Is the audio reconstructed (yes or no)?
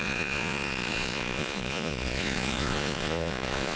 yes